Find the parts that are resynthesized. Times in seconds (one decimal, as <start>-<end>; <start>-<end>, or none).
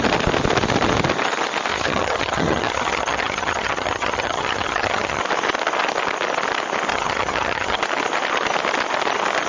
1.7-5.2; 6.9-7.8